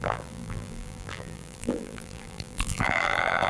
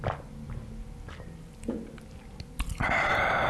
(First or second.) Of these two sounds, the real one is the second